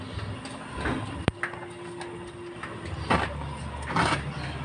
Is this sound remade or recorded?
recorded